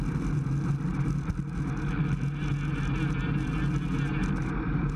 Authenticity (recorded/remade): recorded